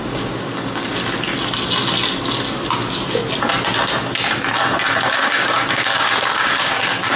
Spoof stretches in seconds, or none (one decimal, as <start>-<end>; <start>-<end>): 0.0-1.0; 5.1-7.2